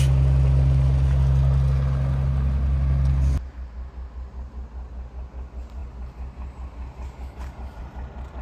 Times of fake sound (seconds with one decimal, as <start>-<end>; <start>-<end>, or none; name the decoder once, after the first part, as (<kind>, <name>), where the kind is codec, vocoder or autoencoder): none